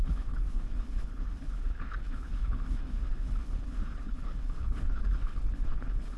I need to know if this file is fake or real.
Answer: fake